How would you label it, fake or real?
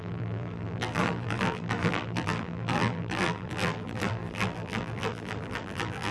fake